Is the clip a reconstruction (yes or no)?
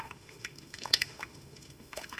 yes